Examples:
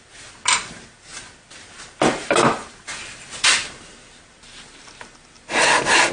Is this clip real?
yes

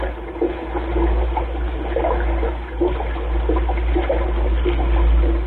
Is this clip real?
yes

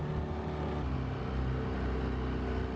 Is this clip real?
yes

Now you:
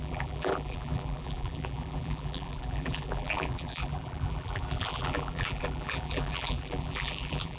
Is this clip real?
no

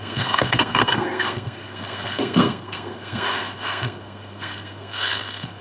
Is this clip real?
no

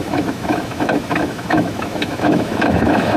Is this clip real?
no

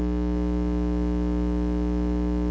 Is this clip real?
yes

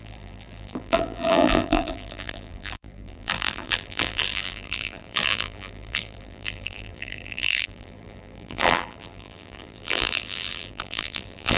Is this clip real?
no